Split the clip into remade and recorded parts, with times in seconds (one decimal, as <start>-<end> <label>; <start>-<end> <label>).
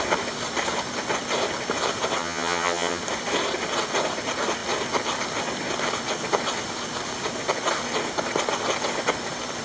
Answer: 0.0-2.2 recorded; 2.2-3.0 remade; 3.0-9.6 recorded